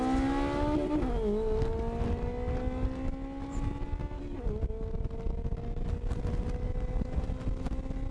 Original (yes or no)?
yes